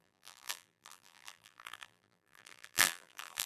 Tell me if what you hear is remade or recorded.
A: remade